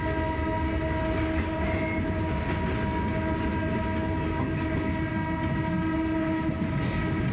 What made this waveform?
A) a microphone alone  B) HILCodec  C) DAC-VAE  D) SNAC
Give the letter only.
A